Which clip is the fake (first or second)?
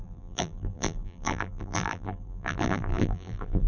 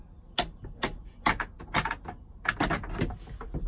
first